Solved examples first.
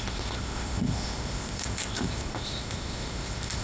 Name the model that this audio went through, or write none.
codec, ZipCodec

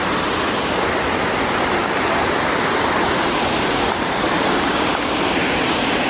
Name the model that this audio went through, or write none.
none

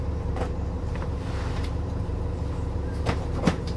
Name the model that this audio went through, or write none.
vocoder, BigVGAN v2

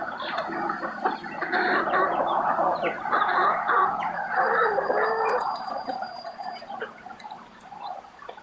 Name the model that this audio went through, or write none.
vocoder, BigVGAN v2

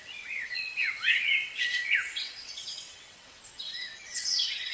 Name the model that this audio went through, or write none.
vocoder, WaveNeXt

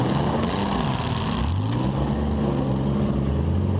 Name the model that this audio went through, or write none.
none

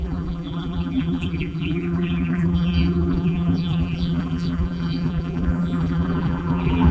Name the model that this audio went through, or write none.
vocoder, BigVGAN v2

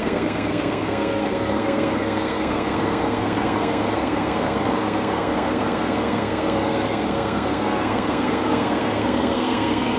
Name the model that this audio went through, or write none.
codec, SNAC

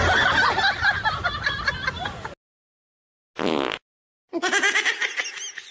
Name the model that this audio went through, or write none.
none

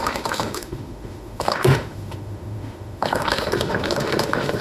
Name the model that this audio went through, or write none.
autoencoder, DAC-VAE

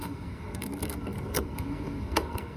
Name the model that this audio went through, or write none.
codec, SNAC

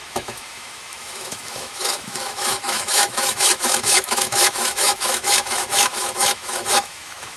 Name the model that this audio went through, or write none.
autoencoder, DAC-VAE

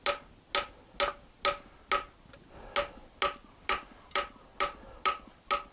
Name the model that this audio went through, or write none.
none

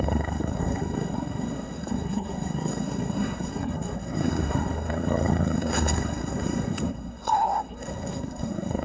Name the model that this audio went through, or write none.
codec, SNAC